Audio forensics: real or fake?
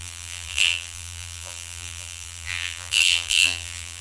fake